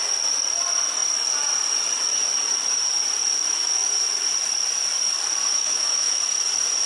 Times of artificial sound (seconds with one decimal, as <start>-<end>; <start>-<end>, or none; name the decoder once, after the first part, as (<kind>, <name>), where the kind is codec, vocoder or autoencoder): 5.6-6.2 (autoencoder, DAC-VAE)